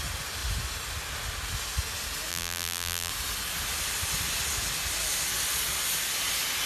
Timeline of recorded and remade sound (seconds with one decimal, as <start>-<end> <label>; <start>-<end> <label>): 0.0-2.3 recorded; 2.3-3.1 remade; 3.1-6.7 recorded